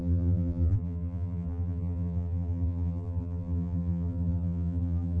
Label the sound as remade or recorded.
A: remade